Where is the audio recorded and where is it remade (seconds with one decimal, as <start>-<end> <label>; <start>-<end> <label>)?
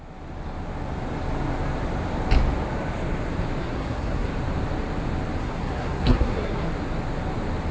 0.0-3.6 recorded; 3.6-4.3 remade; 4.3-5.4 recorded; 5.4-6.7 remade; 6.7-7.7 recorded